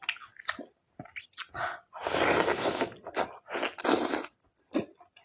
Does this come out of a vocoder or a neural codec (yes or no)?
no